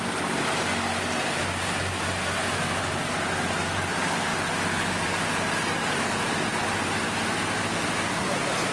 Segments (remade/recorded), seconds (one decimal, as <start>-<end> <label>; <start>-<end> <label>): 0.0-8.7 recorded